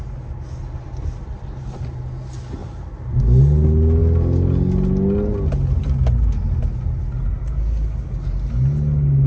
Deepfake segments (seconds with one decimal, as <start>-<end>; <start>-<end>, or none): 2.6-3.4